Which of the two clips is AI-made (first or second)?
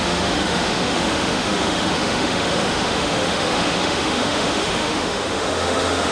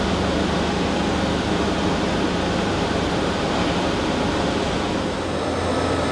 first